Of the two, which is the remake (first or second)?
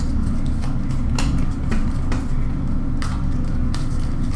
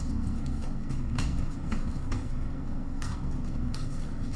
second